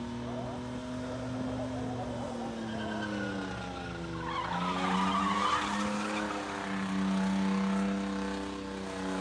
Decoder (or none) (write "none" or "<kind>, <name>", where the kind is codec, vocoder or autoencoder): none